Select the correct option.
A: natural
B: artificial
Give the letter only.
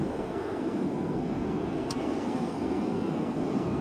B